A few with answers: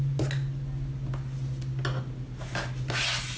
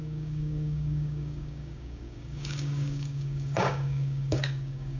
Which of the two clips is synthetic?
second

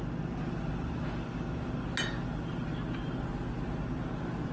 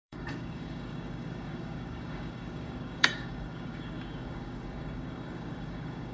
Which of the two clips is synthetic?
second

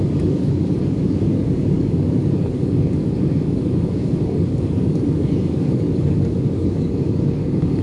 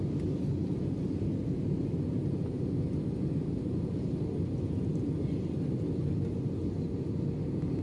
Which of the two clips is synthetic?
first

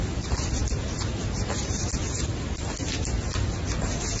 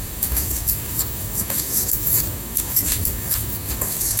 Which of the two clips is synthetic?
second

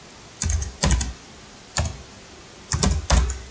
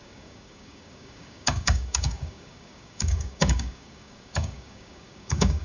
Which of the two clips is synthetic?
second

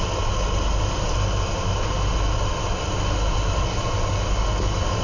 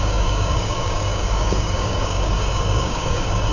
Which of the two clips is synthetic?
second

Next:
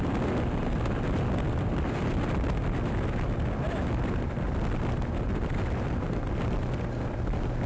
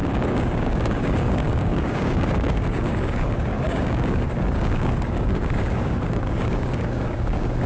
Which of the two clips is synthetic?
second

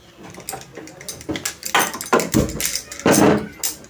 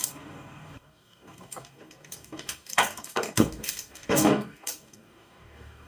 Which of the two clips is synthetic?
second